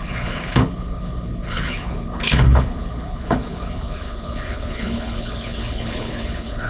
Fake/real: fake